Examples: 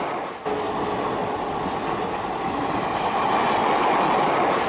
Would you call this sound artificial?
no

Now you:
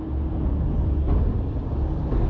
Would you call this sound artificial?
no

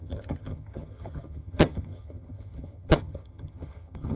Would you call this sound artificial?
yes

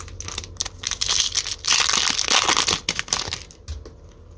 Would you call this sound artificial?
no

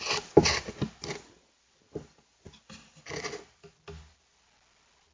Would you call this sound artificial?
no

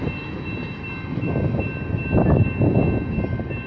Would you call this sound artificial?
no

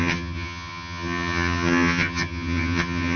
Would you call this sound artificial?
yes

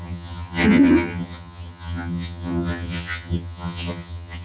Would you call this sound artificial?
yes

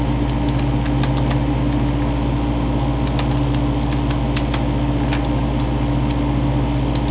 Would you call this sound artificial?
no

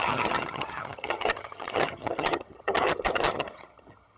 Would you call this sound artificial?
yes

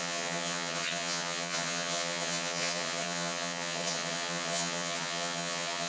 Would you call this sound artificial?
yes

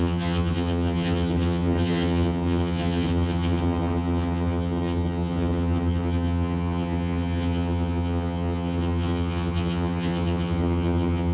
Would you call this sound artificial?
yes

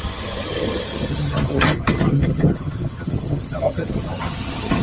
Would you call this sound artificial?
yes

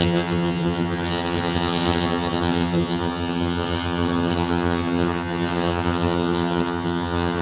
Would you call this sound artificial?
yes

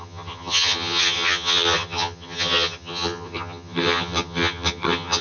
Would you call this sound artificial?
yes